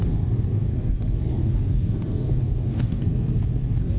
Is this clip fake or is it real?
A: fake